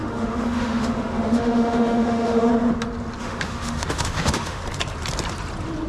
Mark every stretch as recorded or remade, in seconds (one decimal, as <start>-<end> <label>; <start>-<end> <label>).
0.0-2.5 remade; 2.5-3.2 recorded; 3.2-4.6 remade; 4.6-5.9 recorded